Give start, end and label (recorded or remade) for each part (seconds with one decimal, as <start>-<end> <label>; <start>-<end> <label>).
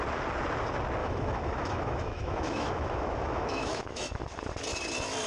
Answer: 0.0-1.0 recorded; 1.0-4.2 remade; 4.2-5.3 recorded